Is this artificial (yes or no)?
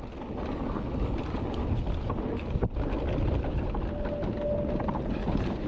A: no